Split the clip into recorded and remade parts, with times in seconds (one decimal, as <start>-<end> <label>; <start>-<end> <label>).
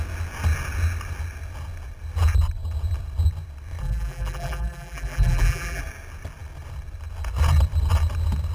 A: 0.0-3.8 recorded; 3.8-5.8 remade; 5.8-8.5 recorded